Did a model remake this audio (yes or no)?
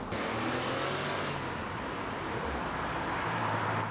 no